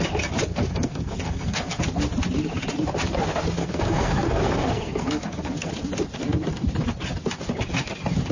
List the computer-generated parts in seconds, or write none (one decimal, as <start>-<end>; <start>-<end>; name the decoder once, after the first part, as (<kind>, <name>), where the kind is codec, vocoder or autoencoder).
0.5-1.8 (codec, SNAC); 3.6-5.7